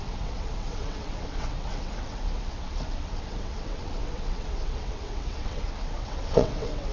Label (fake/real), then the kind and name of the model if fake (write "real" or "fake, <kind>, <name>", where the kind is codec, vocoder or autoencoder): fake, vocoder, WaveNeXt